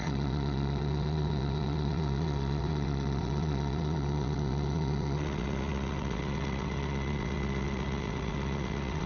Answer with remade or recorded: remade